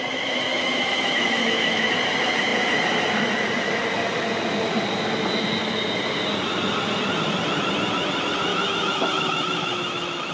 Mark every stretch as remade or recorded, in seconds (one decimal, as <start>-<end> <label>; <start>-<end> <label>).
0.0-0.5 recorded; 0.5-1.9 remade; 1.9-8.5 recorded; 8.5-10.3 remade

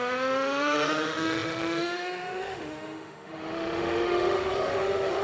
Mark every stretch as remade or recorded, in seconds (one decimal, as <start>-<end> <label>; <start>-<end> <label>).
0.0-5.2 remade